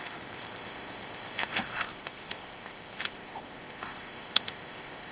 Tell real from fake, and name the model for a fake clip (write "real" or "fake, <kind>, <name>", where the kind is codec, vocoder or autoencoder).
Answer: fake, codec, ZipCodec